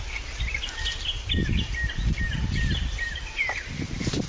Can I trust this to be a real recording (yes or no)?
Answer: yes